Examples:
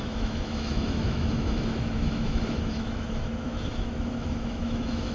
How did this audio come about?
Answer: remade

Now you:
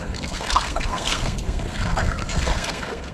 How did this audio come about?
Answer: remade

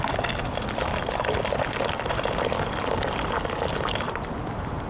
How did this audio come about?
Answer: recorded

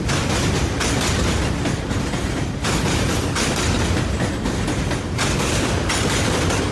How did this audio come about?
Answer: recorded